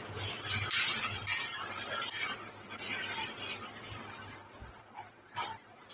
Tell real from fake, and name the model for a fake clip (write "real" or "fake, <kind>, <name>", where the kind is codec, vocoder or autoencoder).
real